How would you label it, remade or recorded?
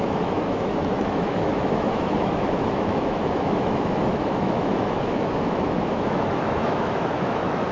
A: remade